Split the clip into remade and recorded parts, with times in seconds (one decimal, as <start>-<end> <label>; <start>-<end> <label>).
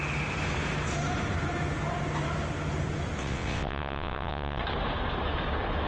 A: 0.0-3.2 recorded; 3.2-4.6 remade; 4.6-5.9 recorded